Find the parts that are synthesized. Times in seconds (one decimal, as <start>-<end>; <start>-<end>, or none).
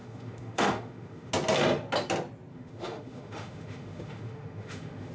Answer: 0.0-1.3; 2.5-5.1